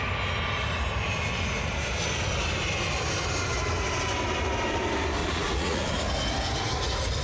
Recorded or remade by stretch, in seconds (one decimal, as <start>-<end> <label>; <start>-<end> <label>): 0.0-5.2 recorded; 5.2-5.9 remade; 5.9-7.2 recorded